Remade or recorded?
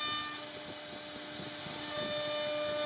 recorded